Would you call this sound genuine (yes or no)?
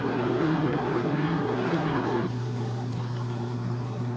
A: no